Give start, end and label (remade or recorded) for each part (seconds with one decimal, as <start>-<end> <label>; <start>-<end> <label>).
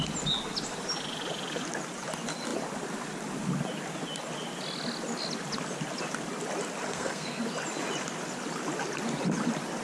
0.0-6.9 recorded; 6.9-7.4 remade; 7.4-9.8 recorded